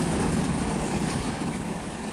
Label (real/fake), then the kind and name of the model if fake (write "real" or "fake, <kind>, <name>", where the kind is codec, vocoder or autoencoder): fake, codec, DAC